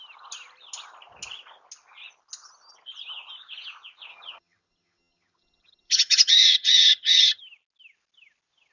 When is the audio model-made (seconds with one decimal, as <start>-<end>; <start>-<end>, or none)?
4.1-7.4